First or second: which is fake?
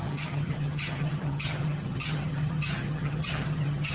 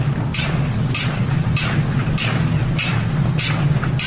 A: first